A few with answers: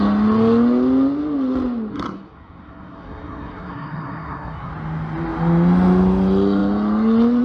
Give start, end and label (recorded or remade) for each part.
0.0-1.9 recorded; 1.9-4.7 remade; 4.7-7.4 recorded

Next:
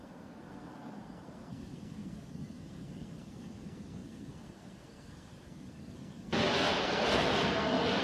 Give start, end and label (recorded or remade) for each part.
0.0-8.0 remade

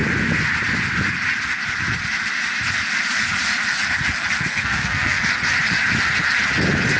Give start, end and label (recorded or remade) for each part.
0.0-4.5 recorded; 4.5-5.3 remade; 5.3-7.0 recorded

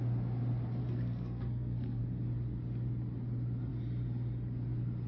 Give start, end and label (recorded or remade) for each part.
0.0-0.8 recorded; 0.8-2.0 remade; 2.0-5.1 recorded

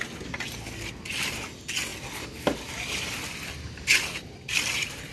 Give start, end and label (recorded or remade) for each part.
0.0-5.1 recorded

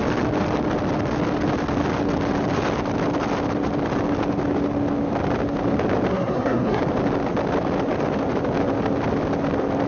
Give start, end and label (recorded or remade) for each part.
0.0-6.1 recorded; 6.1-6.8 remade; 6.8-9.9 recorded

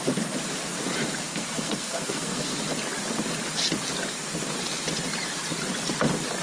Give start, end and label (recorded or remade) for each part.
0.0-1.3 recorded; 1.3-2.5 remade; 2.5-6.4 recorded